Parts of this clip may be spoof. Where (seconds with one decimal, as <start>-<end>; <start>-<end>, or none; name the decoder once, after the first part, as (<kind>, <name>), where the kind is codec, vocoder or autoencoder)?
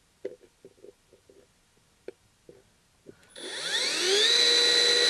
none